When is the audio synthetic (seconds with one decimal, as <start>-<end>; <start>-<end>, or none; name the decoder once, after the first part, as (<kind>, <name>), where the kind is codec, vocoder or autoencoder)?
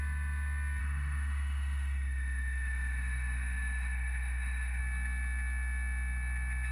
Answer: 0.8-4.8 (autoencoder, DAC-VAE)